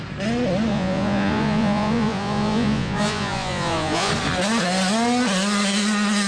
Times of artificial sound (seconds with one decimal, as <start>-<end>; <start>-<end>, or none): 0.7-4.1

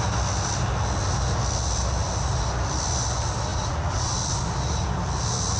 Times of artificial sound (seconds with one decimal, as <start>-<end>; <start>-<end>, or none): 3.5-4.1

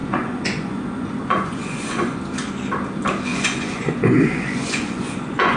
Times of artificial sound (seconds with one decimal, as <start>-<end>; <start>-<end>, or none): 0.0-2.2; 3.3-5.6